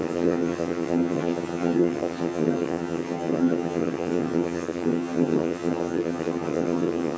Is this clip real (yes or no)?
no